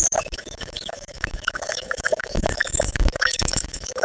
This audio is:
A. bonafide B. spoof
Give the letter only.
B